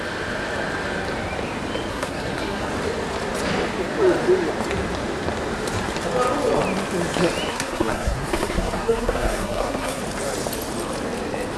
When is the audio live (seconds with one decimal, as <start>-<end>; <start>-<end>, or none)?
0.0-1.9; 2.7-7.5; 10.0-11.6